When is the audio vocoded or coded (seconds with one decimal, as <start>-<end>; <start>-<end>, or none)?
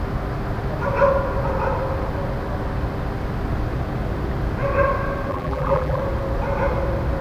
5.3-6.0